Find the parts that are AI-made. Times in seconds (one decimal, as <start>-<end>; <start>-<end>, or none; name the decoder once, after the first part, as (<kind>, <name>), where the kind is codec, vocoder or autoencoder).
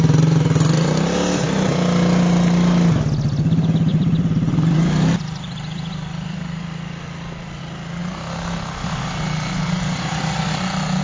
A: 3.9-7.6 (vocoder, BigVGAN v2)